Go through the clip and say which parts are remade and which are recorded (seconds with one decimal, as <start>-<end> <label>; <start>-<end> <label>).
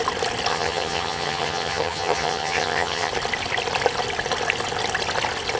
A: 0.0-0.5 recorded; 0.5-3.1 remade; 3.1-5.6 recorded